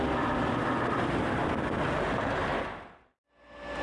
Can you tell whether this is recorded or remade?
recorded